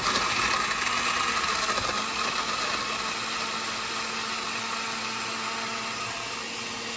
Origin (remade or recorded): recorded